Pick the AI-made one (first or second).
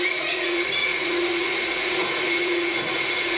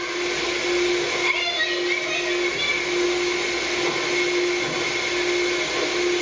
first